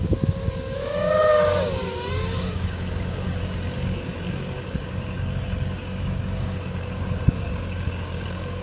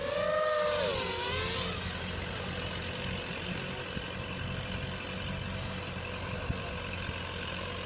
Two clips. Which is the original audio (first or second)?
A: second